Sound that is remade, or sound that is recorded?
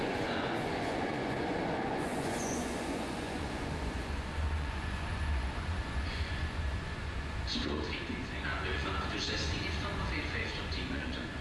remade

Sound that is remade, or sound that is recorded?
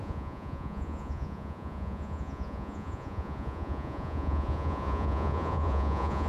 remade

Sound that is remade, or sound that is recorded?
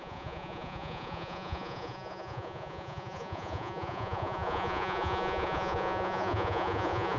remade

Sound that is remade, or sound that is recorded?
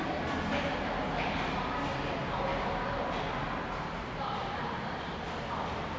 recorded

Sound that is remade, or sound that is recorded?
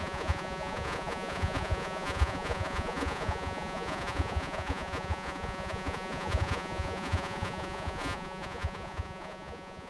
remade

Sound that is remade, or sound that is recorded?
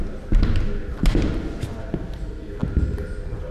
recorded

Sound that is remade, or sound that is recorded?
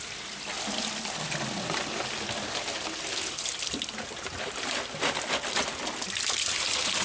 recorded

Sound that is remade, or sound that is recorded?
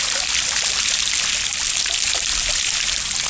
recorded